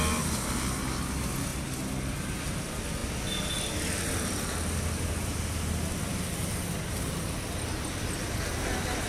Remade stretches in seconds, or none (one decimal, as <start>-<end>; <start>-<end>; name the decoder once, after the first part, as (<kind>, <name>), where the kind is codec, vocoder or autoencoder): none